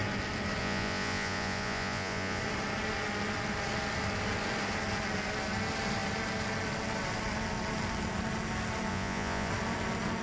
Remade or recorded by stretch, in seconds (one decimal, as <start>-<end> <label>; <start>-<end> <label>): 0.0-0.6 recorded; 0.6-2.4 remade; 2.4-8.9 recorded; 8.9-9.5 remade; 9.5-10.2 recorded